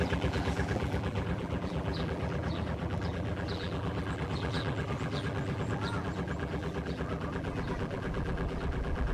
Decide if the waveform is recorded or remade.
remade